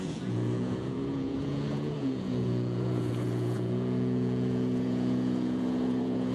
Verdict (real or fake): fake